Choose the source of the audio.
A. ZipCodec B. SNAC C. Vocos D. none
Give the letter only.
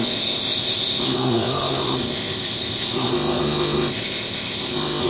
A